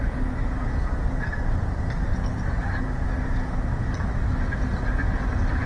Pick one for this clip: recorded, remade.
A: recorded